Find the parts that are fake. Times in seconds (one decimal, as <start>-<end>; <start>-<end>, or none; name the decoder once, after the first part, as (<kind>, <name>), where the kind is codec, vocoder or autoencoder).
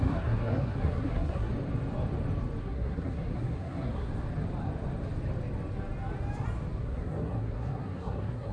0.0-1.5 (codec, SNAC); 2.6-4.1; 6.8-8.5